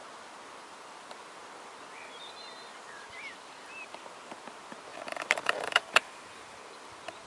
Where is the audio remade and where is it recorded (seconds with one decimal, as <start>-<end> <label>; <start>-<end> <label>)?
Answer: 0.0-4.9 recorded; 4.9-6.6 remade; 6.6-7.3 recorded